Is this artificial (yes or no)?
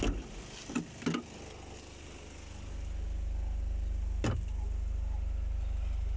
no